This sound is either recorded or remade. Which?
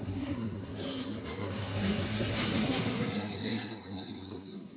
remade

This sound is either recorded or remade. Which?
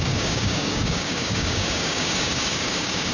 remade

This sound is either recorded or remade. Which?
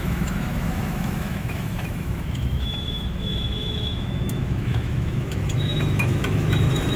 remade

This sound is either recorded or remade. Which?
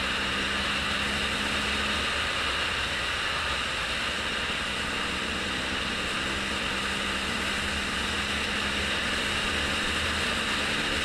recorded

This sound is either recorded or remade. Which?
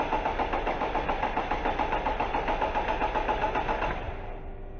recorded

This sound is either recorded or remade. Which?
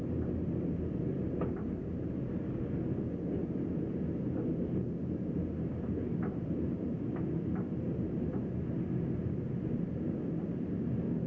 recorded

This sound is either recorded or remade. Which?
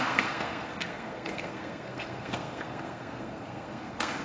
remade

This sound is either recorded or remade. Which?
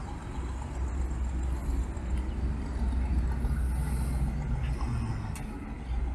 recorded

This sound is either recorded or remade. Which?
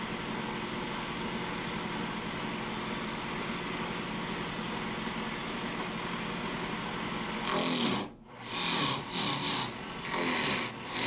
recorded